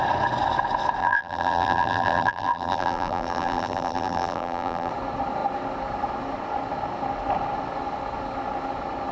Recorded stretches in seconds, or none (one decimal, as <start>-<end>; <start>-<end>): 0.0-1.0; 4.9-9.1

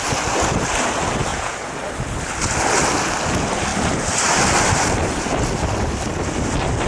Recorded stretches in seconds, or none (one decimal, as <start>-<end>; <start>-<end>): 0.0-1.3; 1.8-6.9

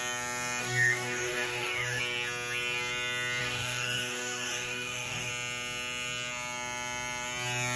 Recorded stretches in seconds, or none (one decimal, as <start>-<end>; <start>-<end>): 0.0-0.6; 2.0-3.4; 5.3-7.8

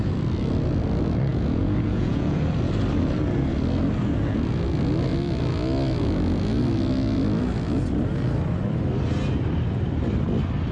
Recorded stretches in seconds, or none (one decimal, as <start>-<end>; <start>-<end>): 0.0-1.3; 2.4-10.7

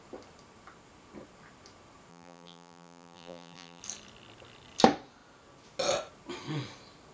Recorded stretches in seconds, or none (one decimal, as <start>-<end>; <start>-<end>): 0.0-2.1; 3.8-7.1

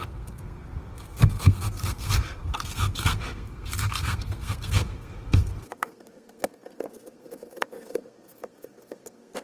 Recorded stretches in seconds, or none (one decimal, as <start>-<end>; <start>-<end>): none